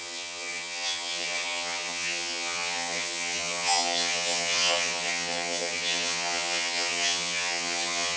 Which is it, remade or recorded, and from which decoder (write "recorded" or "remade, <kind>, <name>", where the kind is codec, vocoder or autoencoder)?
remade, vocoder, HiFi-GAN